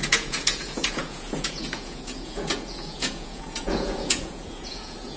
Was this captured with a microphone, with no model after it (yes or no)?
no